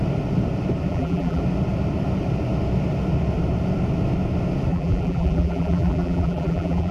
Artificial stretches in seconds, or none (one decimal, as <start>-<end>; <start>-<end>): 0.9-1.4; 4.7-6.9